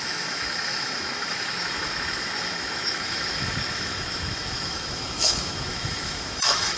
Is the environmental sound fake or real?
fake